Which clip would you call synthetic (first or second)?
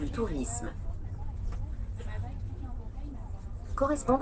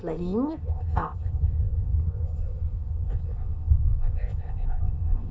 second